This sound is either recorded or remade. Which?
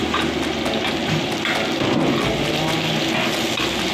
recorded